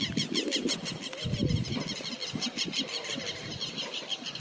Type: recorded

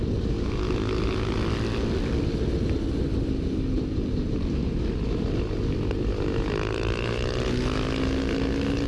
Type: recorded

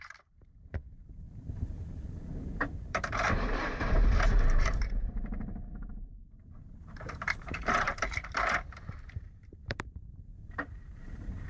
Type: remade